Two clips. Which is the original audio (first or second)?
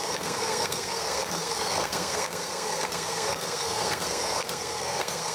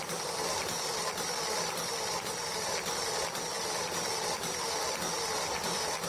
second